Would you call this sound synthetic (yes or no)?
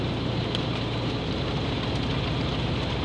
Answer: yes